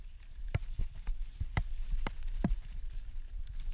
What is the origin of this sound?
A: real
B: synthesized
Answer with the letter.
A